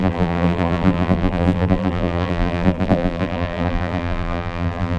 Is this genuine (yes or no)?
no